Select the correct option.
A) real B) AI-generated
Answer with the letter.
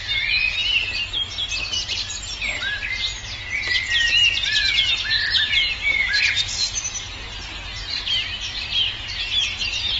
A